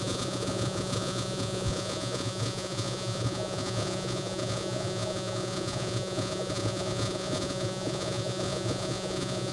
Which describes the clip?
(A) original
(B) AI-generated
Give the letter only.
B